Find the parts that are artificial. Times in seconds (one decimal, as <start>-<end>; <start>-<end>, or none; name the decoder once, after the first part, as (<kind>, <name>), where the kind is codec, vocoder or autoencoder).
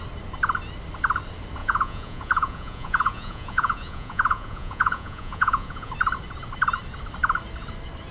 1.6-5.9 (vocoder, Vocos)